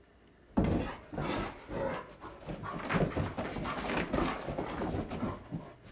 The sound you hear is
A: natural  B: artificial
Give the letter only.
A